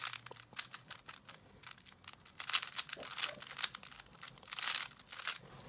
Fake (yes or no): no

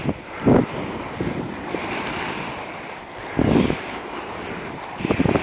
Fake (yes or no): no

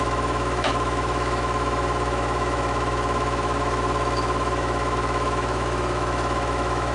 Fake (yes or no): yes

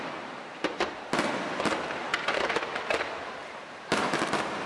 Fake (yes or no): no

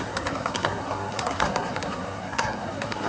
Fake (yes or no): yes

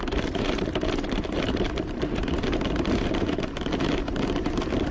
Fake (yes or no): yes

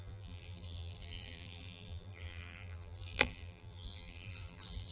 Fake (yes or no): yes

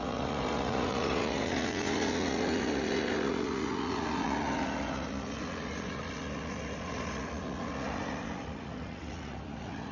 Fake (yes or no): yes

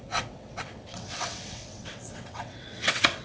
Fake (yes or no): yes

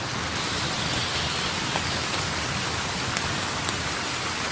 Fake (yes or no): no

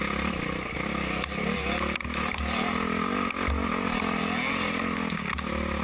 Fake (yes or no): no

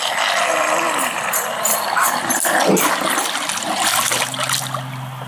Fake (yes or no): no